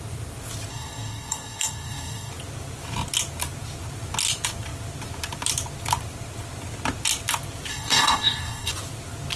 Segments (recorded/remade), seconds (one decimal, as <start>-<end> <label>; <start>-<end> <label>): 0.0-0.7 recorded; 0.7-2.3 remade; 2.3-7.7 recorded; 7.7-8.7 remade; 8.7-9.4 recorded